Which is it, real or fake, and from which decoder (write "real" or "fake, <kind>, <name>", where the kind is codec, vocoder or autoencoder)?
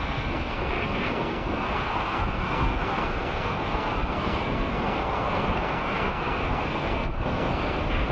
fake, codec, SNAC